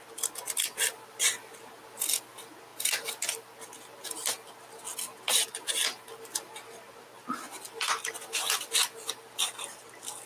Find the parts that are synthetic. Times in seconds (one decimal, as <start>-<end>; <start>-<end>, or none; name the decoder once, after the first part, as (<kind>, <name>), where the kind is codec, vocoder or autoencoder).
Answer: none